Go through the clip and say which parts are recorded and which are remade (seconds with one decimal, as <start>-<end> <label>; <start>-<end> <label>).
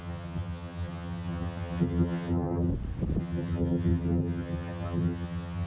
0.0-2.7 remade; 2.7-3.2 recorded; 3.2-5.7 remade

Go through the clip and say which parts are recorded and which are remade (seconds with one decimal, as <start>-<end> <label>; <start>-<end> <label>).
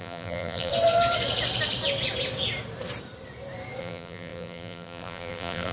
0.0-0.7 remade; 0.7-3.8 recorded; 3.8-5.7 remade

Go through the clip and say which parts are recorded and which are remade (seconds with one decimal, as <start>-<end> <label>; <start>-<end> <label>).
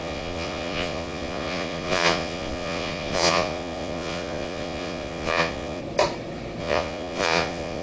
0.0-5.8 remade; 5.8-6.6 recorded; 6.6-7.8 remade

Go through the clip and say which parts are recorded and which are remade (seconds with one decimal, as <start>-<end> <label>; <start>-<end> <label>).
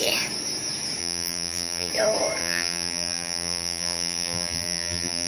0.0-1.0 recorded; 1.0-1.9 remade; 1.9-2.4 recorded; 2.4-5.3 remade